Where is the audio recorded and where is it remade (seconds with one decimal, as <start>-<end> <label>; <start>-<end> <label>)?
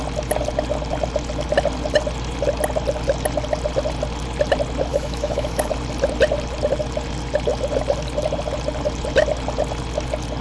0.0-4.9 recorded; 4.9-5.7 remade; 5.7-10.4 recorded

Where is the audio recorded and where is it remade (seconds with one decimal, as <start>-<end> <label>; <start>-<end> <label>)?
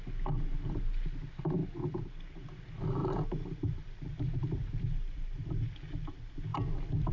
0.0-1.6 recorded; 1.6-2.4 remade; 2.4-3.0 recorded; 3.0-6.1 remade; 6.1-6.5 recorded; 6.5-7.1 remade